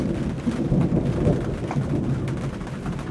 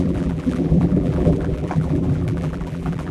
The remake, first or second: second